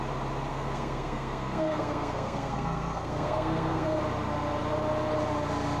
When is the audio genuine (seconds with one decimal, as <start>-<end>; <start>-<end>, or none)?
0.0-0.5; 4.0-5.8